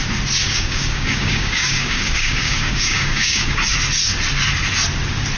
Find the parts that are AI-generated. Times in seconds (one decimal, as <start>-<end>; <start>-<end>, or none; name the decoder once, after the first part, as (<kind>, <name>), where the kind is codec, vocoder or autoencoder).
0.4-3.6 (codec, DAC)